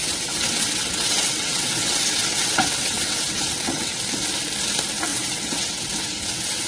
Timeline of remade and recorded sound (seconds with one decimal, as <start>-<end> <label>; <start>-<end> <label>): 0.0-4.0 remade; 4.0-5.1 recorded; 5.1-6.7 remade